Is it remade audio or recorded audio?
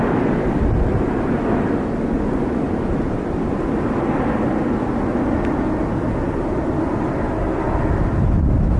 recorded